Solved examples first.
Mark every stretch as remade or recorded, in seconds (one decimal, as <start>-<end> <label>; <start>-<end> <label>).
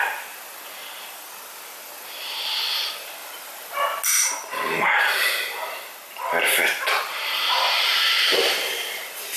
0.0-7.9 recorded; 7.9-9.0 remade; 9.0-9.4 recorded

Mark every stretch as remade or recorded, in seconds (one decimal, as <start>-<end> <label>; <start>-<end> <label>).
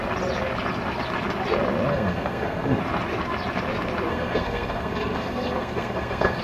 0.0-1.9 recorded; 1.9-2.8 remade; 2.8-4.1 recorded; 4.1-6.4 remade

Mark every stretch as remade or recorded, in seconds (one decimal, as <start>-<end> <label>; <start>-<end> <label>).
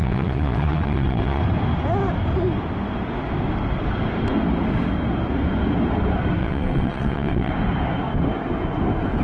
0.0-1.4 remade; 1.4-6.4 recorded; 6.4-7.5 remade; 7.5-9.2 recorded